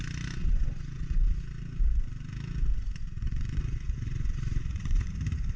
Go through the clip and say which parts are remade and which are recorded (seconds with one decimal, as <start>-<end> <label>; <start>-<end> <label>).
0.0-0.4 recorded; 0.4-1.4 remade; 1.4-3.0 recorded; 3.0-5.1 remade; 5.1-5.6 recorded